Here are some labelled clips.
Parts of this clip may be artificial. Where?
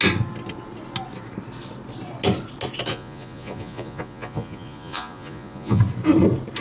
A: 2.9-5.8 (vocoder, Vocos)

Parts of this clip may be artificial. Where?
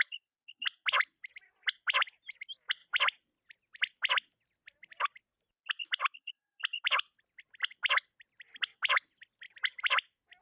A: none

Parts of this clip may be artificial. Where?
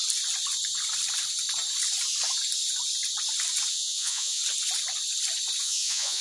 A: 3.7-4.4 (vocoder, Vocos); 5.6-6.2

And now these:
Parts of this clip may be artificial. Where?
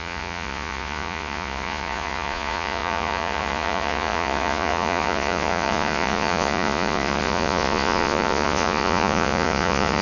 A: 0.0-10.0 (vocoder, Vocos)